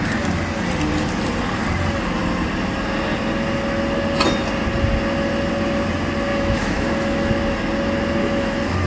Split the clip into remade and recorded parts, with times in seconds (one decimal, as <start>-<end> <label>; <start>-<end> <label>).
0.0-6.3 recorded; 6.3-7.3 remade; 7.3-8.2 recorded; 8.2-8.9 remade